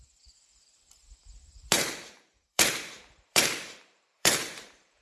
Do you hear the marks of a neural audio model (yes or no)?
yes